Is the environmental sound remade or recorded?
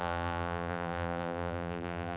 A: remade